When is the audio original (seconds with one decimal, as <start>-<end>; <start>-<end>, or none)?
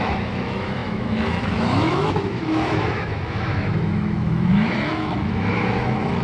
none